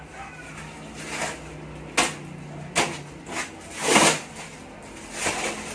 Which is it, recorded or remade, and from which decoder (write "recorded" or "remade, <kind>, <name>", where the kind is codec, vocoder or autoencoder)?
recorded